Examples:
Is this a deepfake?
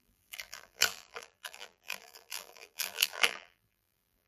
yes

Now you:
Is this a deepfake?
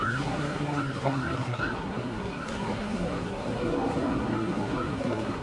yes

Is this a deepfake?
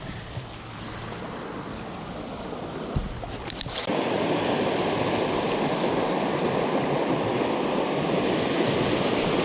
no